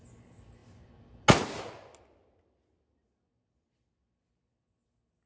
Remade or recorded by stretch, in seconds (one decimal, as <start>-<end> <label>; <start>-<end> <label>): 0.0-5.3 recorded